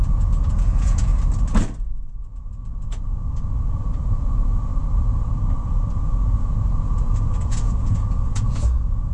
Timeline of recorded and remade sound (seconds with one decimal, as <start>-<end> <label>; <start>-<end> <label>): 0.0-1.1 remade; 1.1-2.2 recorded; 2.2-4.7 remade; 4.7-5.9 recorded; 5.9-9.1 remade